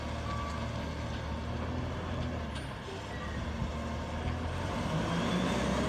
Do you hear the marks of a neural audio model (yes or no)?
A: no